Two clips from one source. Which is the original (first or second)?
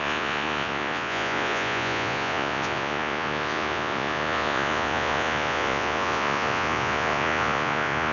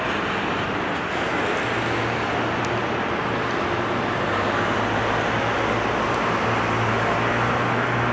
second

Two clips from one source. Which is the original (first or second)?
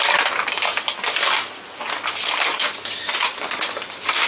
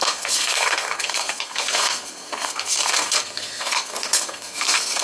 first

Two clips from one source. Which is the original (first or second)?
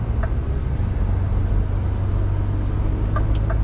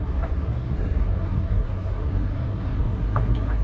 first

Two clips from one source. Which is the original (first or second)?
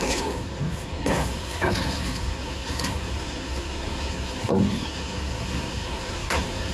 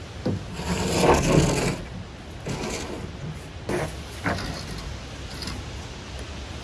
second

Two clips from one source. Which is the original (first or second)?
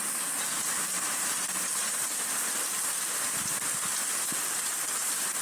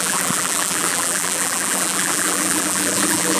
first